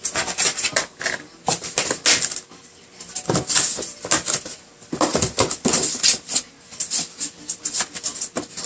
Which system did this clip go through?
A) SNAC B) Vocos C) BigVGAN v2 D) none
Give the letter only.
D